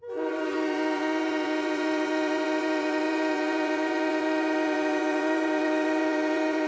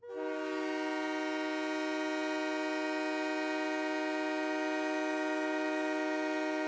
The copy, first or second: first